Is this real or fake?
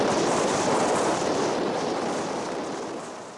real